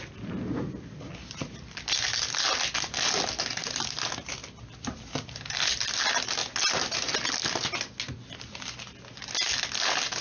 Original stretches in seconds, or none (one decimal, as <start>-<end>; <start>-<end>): 0.0-10.2